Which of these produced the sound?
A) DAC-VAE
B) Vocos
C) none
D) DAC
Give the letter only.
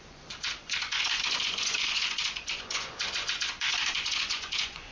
B